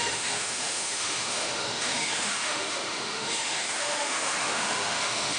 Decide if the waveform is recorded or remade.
remade